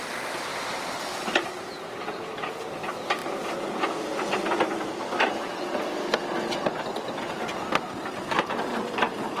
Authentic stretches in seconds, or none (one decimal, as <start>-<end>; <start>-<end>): 0.0-0.5; 2.3-8.7